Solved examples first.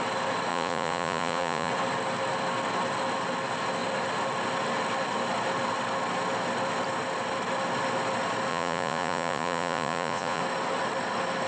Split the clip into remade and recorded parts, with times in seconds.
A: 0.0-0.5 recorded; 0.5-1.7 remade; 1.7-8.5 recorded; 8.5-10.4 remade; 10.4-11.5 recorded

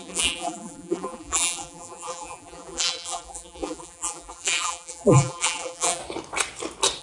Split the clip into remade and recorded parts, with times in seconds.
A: 0.0-6.0 remade; 6.0-7.0 recorded

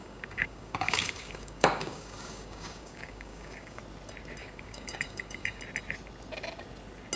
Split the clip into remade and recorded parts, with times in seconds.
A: 0.0-3.8 remade; 3.8-4.4 recorded; 4.4-5.6 remade; 5.6-7.2 recorded

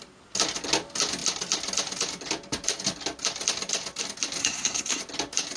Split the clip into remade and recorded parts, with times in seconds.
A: 0.0-4.4 recorded; 4.4-5.0 remade; 5.0-5.6 recorded

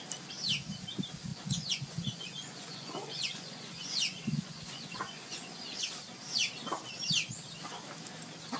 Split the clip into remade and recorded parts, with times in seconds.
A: 0.0-1.3 recorded; 1.3-5.8 remade; 5.8-8.6 recorded

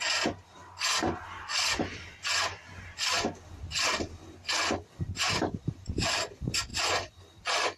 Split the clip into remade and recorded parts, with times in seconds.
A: 0.0-0.6 remade; 0.6-5.2 recorded; 5.2-6.7 remade; 6.7-7.8 recorded

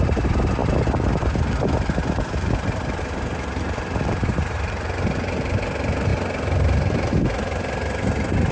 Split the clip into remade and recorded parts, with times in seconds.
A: 0.0-0.6 recorded; 0.6-3.0 remade; 3.0-8.5 recorded

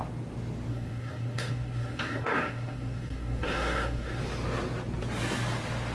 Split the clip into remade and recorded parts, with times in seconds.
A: 0.0-0.7 recorded; 0.7-4.2 remade; 4.2-5.9 recorded